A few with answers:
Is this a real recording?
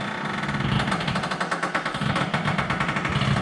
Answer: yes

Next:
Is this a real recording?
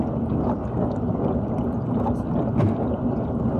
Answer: yes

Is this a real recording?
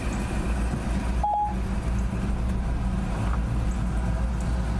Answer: yes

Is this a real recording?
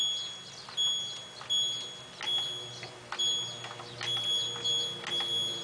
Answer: yes